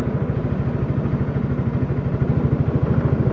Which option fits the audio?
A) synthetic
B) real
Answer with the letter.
B